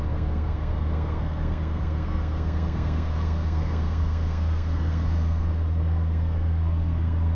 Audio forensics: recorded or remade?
remade